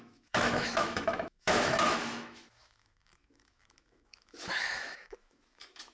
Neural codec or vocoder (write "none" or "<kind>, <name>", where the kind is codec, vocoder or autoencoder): autoencoder, DAC-VAE